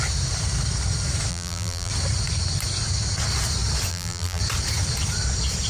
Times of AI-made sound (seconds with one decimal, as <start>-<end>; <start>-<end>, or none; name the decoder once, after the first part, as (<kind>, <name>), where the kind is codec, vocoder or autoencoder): 1.3-1.9 (vocoder, BigVGAN v2); 3.9-4.4